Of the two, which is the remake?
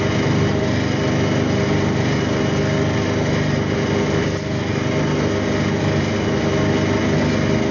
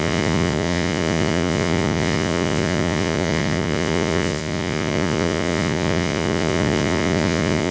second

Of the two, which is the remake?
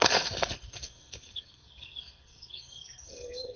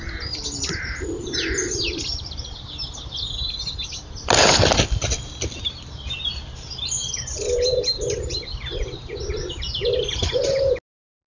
first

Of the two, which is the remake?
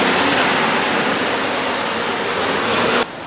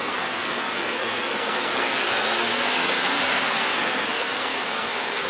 second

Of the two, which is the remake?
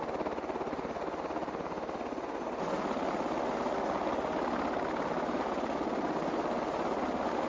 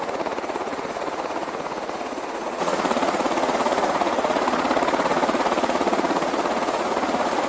second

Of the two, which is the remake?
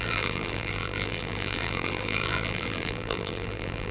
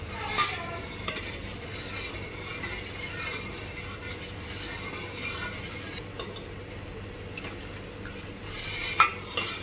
first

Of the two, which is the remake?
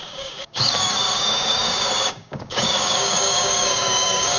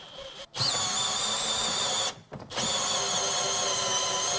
first